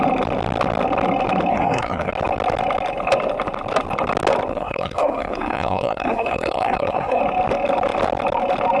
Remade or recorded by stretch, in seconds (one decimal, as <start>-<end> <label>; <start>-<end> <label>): 0.0-1.5 recorded; 1.5-2.1 remade; 2.1-4.5 recorded; 4.5-7.2 remade; 7.2-8.8 recorded